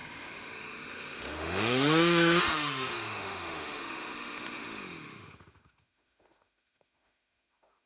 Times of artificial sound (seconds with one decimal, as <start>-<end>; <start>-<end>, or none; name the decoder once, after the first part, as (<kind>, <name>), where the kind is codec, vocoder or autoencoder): 0.0-7.9 (autoencoder, DAC-VAE)

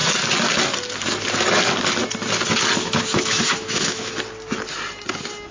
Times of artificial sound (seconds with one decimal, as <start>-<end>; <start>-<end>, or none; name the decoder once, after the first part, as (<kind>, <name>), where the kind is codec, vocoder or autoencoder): 2.8-4.1 (autoencoder, DAC-VAE)

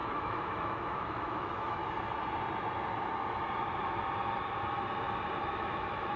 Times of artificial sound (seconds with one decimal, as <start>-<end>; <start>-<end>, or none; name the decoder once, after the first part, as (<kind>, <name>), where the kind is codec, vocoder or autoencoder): 0.0-1.8 (autoencoder, DAC-VAE); 5.5-6.2

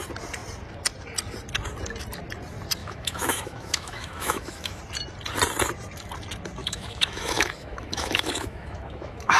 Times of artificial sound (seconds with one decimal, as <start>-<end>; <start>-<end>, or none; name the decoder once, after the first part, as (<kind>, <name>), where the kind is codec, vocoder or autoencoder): 2.8-4.8 (autoencoder, DAC-VAE); 6.6-9.4

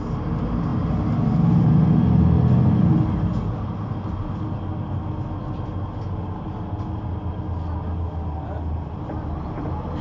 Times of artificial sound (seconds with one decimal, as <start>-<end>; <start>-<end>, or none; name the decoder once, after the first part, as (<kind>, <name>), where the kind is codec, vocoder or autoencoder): none